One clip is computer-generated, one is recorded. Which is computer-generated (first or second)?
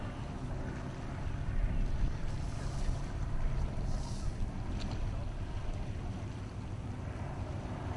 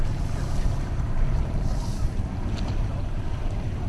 second